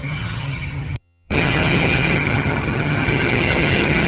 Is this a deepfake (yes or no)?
yes